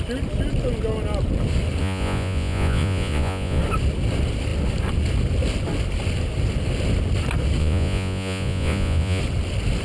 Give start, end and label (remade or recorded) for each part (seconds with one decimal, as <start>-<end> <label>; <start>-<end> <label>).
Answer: 0.0-1.8 recorded; 1.8-3.6 remade; 3.6-7.6 recorded; 7.6-9.2 remade; 9.2-9.8 recorded